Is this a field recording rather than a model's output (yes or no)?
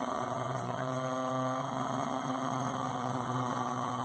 no